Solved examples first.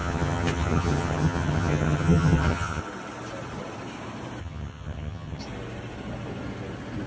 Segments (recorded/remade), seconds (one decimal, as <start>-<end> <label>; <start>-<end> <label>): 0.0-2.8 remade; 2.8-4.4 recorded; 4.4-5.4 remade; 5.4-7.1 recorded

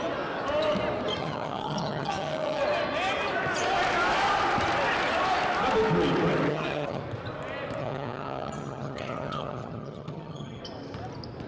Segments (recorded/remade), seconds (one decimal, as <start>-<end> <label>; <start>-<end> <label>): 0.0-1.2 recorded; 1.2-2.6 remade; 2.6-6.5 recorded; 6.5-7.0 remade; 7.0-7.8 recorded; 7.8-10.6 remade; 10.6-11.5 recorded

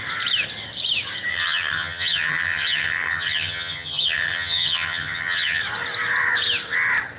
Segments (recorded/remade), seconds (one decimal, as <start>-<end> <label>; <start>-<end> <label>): 0.0-1.3 recorded; 1.3-5.6 remade; 5.6-7.2 recorded